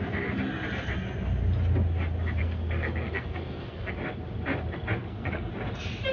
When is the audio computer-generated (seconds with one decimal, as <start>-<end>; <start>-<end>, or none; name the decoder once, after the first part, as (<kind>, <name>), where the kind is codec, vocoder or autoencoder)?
2.4-3.9 (codec, SNAC); 5.0-5.5